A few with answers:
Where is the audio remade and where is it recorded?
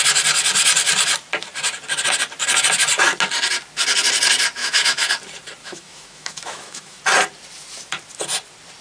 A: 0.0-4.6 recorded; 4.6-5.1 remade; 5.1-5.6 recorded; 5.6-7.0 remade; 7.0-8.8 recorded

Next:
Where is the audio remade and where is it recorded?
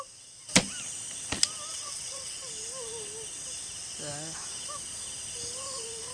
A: 0.0-1.7 recorded; 1.7-2.5 remade; 2.5-6.1 recorded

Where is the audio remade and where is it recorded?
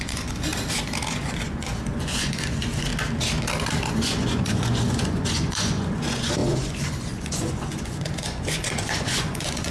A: 0.0-0.5 remade; 0.5-1.1 recorded; 1.1-2.9 remade; 2.9-3.9 recorded; 3.9-9.7 remade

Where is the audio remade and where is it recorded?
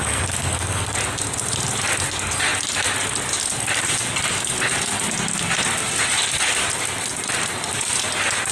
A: 0.0-1.0 remade; 1.0-8.5 recorded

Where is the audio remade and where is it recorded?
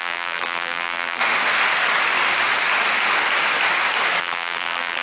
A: 0.0-1.2 remade; 1.2-4.2 recorded; 4.2-5.0 remade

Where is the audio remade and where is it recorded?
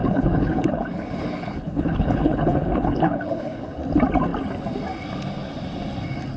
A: 0.0-3.8 remade; 3.8-6.4 recorded